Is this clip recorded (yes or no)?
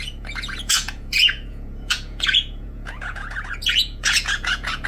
no